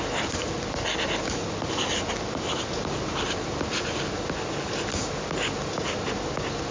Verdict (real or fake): real